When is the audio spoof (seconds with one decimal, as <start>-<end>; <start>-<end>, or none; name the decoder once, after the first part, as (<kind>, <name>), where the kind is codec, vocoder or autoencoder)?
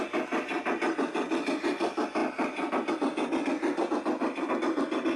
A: none